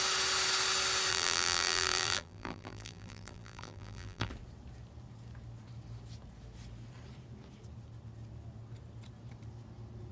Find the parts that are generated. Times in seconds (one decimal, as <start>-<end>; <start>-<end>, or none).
1.1-4.3